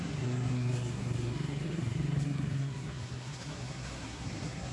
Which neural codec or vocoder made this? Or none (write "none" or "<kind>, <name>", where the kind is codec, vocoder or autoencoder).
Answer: codec, SNAC